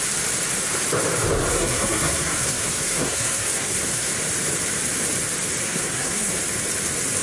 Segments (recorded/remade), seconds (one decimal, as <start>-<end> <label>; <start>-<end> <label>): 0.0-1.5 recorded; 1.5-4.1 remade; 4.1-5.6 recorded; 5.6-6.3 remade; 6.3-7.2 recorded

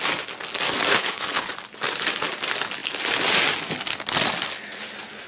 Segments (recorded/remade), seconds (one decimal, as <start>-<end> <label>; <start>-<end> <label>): 0.0-0.9 recorded; 0.9-1.5 remade; 1.5-5.3 recorded

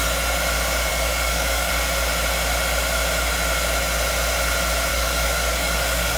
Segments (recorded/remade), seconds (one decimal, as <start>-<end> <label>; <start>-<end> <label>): 0.0-0.9 recorded; 0.9-1.7 remade; 1.7-4.9 recorded; 4.9-6.2 remade

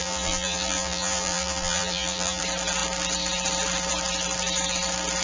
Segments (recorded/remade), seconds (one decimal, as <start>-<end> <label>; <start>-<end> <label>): 0.0-2.4 remade; 2.4-5.2 recorded

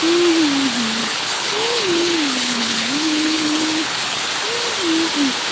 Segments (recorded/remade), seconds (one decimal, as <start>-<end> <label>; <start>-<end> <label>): 0.0-1.0 recorded; 1.0-4.3 remade; 4.3-5.5 recorded

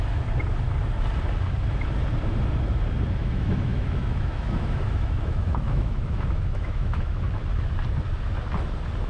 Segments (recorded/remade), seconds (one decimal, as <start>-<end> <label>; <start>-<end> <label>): 0.0-3.2 recorded; 3.2-7.2 remade; 7.2-9.1 recorded